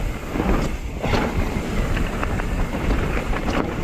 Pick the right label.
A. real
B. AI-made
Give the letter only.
B